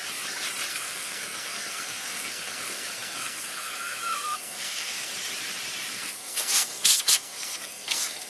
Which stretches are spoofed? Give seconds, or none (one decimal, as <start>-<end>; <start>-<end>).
0.7-5.1; 5.9-8.3

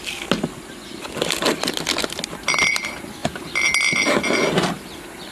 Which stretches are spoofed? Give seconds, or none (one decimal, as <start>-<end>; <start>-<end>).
none

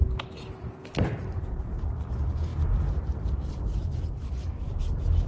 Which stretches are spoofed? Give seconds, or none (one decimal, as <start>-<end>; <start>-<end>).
2.5-4.8

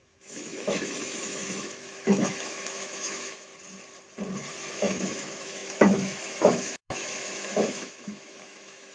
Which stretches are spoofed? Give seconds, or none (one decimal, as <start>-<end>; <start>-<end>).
0.0-3.5; 4.7-8.9

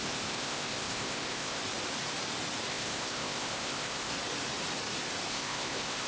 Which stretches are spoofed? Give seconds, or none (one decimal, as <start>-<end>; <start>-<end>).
0.0-1.6; 2.7-4.1; 5.3-6.1

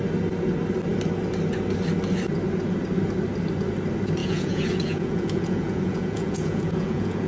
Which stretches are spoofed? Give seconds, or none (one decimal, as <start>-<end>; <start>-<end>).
4.2-7.3

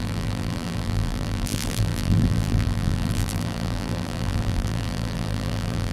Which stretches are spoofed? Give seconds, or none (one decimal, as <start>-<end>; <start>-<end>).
0.0-5.9